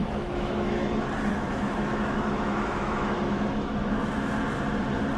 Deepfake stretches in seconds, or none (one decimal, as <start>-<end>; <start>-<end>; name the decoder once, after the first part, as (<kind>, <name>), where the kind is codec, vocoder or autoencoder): 0.0-0.9 (autoencoder, DAC-VAE); 1.3-4.4